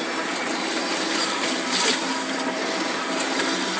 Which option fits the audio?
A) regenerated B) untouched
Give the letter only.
B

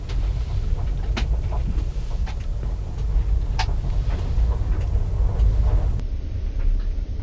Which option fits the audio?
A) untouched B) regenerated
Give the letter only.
A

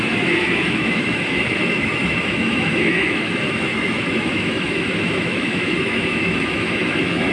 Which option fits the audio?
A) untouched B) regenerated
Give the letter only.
B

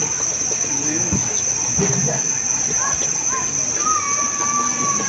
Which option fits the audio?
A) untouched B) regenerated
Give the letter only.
A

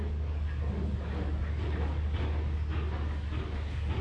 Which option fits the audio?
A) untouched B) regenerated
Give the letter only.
B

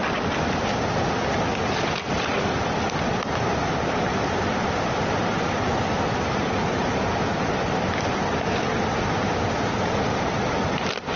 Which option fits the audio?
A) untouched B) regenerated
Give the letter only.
A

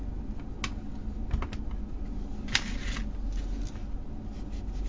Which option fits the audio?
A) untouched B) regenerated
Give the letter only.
A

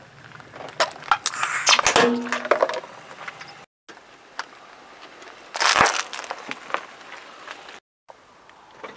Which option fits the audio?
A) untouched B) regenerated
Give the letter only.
A